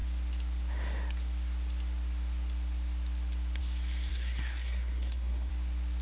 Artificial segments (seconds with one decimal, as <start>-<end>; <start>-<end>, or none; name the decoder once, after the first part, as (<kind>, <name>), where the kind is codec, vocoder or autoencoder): 4.1-5.5 (codec, SNAC)

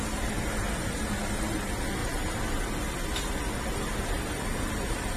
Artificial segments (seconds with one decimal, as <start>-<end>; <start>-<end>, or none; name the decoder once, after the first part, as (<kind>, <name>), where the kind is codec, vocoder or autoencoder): 2.0-2.6 (vocoder, BigVGAN v2)

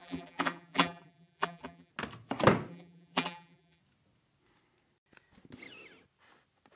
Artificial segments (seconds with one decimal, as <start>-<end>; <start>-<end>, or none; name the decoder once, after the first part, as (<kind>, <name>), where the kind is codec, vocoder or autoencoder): 0.0-1.9 (vocoder, BigVGAN v2); 2.7-3.8

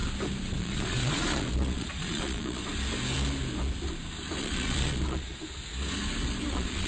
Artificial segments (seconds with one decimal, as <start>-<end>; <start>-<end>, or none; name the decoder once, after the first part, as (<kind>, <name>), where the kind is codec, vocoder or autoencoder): 0.6-2.6 (vocoder, Vocos); 4.4-5.4; 6.5-6.9

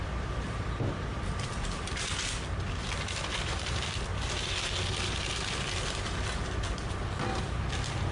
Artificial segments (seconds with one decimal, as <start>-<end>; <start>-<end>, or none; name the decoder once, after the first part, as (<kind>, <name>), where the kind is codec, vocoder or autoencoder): 0.0-1.9 (vocoder, BigVGAN v2); 3.6-4.1; 7.4-8.1

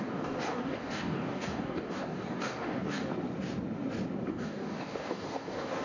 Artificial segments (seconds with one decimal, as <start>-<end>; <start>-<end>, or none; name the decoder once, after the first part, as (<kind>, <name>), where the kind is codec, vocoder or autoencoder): 0.0-3.1 (codec, DAC); 4.2-5.8